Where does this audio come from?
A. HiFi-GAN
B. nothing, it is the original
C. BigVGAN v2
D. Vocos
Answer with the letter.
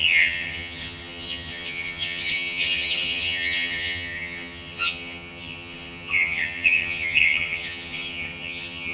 A